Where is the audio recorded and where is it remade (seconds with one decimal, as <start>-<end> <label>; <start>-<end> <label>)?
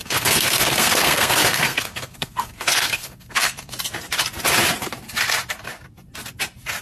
0.0-3.8 remade; 3.8-6.8 recorded